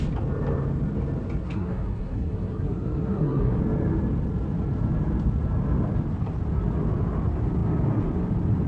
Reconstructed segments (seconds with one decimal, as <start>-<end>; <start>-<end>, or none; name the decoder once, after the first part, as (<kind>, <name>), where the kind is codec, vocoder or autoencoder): 1.4-3.6 (codec, SNAC)